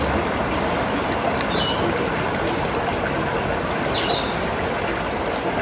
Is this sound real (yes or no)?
yes